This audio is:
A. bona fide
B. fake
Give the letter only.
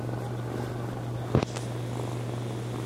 A